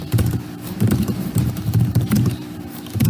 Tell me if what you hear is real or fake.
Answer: fake